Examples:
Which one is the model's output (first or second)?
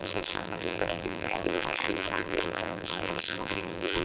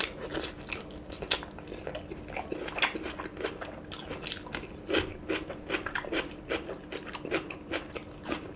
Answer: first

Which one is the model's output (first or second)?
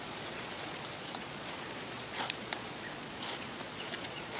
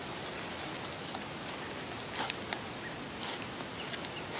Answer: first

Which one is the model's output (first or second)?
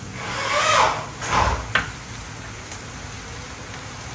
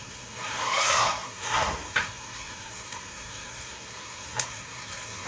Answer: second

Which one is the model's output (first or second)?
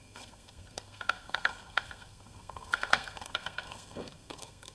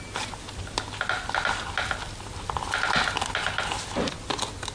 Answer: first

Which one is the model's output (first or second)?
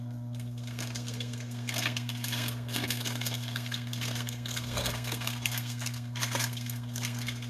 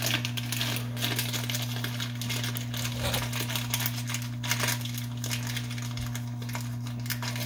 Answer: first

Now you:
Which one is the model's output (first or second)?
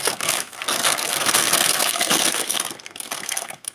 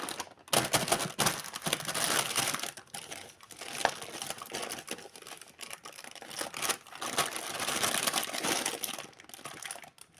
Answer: first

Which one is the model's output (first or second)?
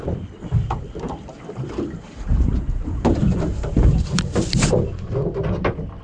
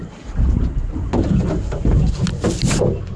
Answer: first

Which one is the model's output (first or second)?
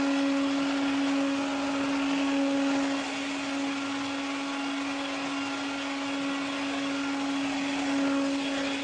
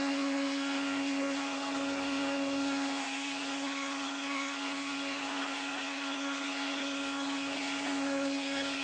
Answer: second